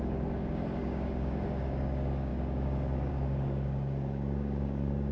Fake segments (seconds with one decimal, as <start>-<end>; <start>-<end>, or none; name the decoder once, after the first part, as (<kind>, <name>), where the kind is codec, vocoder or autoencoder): 0.0-5.1 (codec, DAC)